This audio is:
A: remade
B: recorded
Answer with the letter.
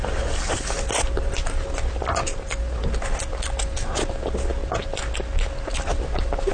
B